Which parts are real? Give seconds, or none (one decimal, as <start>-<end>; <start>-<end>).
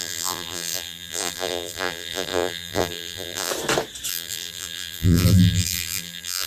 3.5-4.1